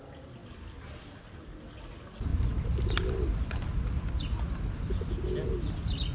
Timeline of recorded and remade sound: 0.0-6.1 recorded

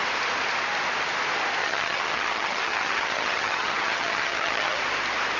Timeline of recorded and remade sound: 0.0-1.6 recorded; 1.6-4.8 remade; 4.8-5.4 recorded

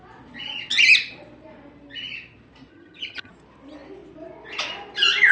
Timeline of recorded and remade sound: 0.0-2.7 recorded; 2.7-3.3 remade; 3.3-5.3 recorded

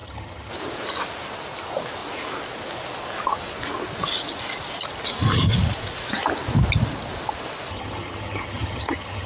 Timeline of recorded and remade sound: 0.0-0.5 remade; 0.5-7.7 recorded; 7.7-9.3 remade